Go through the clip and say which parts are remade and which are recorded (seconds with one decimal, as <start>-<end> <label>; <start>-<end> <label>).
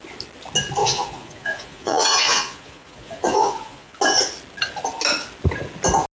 0.0-0.8 recorded; 0.8-4.0 remade; 4.0-6.2 recorded